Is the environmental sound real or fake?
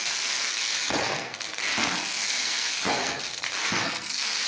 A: fake